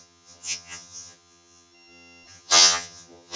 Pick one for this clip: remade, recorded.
remade